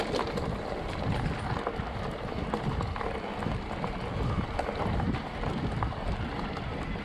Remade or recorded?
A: recorded